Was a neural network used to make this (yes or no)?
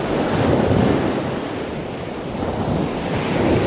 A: no